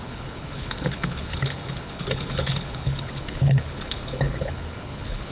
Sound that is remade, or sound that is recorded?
remade